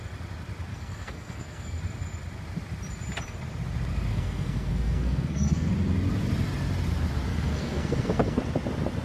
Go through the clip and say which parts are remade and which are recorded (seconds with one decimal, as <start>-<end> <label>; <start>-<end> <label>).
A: 0.0-0.7 recorded; 0.7-1.8 remade; 1.8-4.1 recorded; 4.1-5.7 remade; 5.7-7.3 recorded; 7.3-8.4 remade; 8.4-9.0 recorded